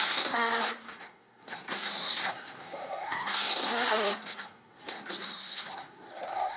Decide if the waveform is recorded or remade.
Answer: remade